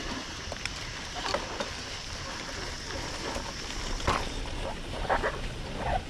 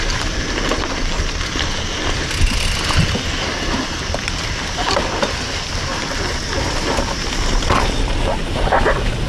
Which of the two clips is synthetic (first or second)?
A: first